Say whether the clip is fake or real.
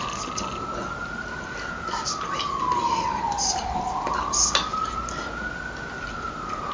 real